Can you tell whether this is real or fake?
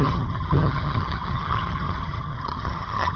fake